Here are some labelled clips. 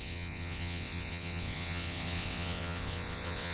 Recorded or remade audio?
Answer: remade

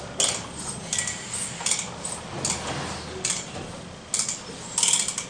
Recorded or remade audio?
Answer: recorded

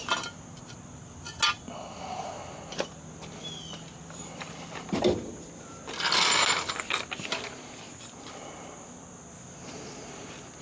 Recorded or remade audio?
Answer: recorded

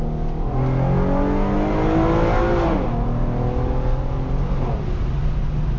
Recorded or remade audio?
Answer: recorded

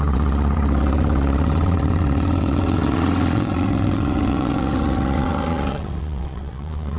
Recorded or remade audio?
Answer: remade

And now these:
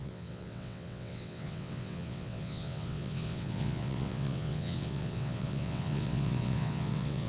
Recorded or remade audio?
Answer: remade